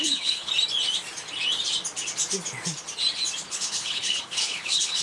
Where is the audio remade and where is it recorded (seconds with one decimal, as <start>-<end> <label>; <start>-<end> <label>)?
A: 0.0-0.5 remade; 0.5-3.5 recorded; 3.5-5.0 remade